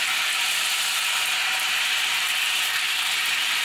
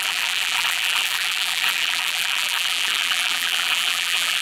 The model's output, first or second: second